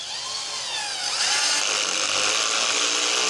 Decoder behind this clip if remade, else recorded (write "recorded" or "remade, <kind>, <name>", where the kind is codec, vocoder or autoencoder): recorded